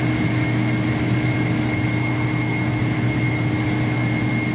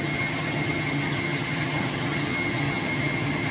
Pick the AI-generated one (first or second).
second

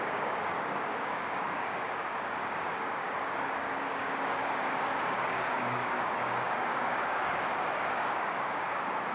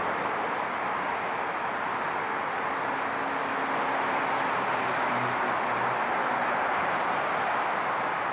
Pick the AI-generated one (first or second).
first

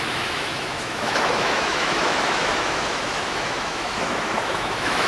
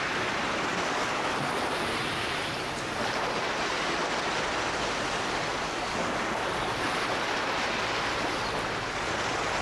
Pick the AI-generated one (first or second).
first